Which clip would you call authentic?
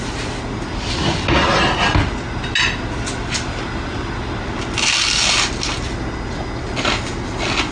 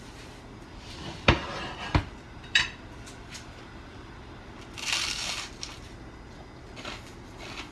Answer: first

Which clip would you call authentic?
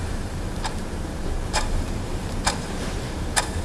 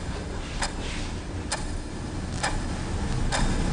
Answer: second